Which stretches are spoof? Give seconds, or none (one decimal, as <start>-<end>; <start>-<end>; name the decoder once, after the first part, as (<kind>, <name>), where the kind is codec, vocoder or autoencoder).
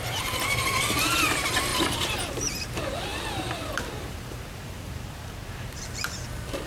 0.0-6.7 (vocoder, BigVGAN v2)